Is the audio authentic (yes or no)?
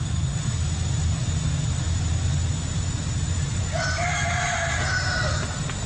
yes